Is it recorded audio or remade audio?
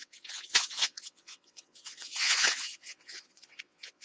remade